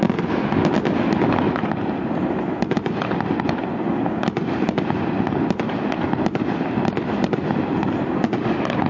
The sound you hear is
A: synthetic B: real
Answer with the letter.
B